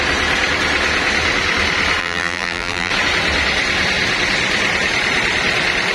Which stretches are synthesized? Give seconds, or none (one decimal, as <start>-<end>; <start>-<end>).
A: 2.0-2.9